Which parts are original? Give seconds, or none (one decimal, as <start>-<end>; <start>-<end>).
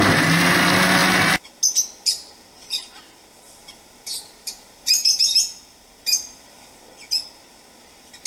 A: 0.0-3.6; 6.8-8.3